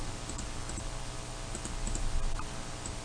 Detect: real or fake real